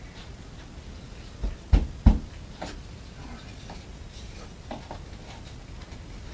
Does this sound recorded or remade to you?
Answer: recorded